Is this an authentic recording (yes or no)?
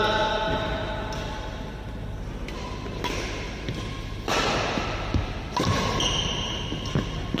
yes